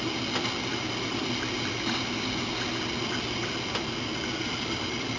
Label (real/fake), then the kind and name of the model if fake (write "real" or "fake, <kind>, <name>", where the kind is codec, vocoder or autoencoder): real